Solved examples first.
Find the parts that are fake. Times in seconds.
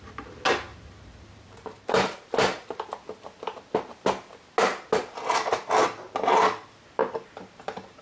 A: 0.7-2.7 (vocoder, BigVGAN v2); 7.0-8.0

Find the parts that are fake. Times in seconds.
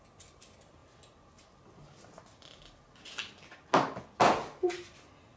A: none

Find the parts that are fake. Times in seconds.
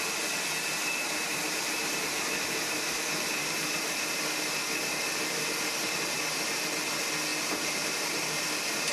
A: 0.8-3.9 (vocoder, BigVGAN v2); 7.3-8.4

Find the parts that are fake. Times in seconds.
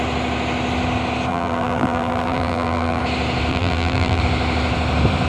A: 1.3-3.0 (vocoder, BigVGAN v2); 3.5-4.2